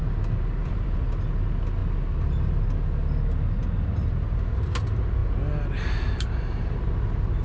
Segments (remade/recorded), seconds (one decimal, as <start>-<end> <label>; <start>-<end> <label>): 0.0-0.6 recorded; 0.6-1.2 remade; 1.2-7.4 recorded